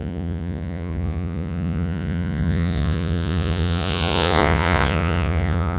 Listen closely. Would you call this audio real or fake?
fake